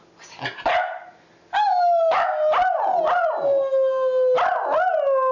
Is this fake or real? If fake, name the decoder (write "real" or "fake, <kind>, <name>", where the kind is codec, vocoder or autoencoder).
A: real